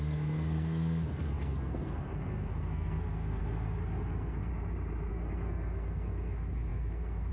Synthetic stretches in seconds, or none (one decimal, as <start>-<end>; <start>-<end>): 0.0-4.5; 5.1-7.3